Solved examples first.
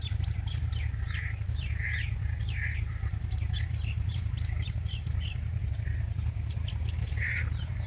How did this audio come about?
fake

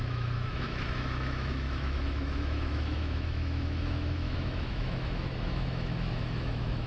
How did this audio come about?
fake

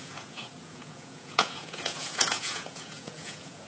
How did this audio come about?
fake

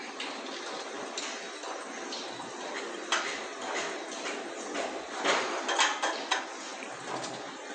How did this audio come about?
real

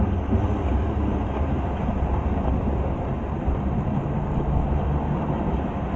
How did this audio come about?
real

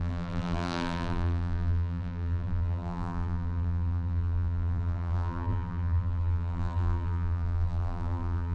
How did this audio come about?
fake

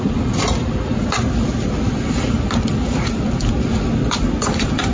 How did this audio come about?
real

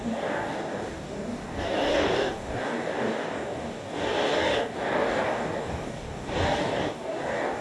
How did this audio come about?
fake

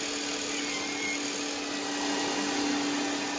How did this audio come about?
real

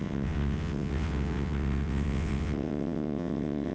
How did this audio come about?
fake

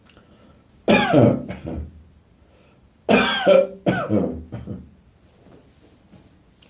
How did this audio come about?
real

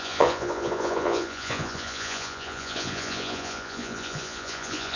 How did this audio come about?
fake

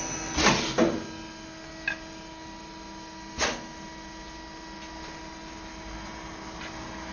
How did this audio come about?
real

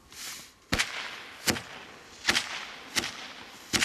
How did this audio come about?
real